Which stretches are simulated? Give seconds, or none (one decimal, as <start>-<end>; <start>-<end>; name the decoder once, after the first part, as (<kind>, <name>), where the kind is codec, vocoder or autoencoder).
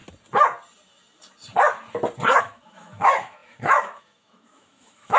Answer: 2.4-5.2 (autoencoder, DAC-VAE)